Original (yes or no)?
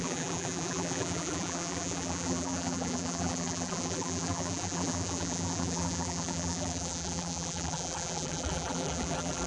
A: no